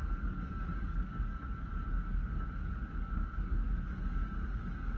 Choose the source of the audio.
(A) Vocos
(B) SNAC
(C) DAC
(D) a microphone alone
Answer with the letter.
C